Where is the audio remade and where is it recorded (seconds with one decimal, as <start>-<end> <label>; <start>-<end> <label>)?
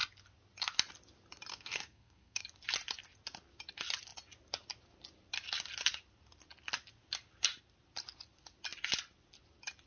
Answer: 0.0-1.5 recorded; 1.5-2.4 remade; 2.4-9.9 recorded